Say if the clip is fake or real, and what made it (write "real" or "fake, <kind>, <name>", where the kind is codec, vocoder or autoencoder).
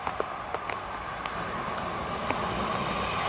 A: real